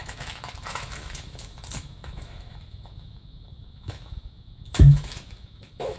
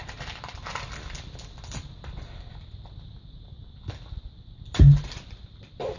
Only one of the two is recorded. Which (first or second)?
second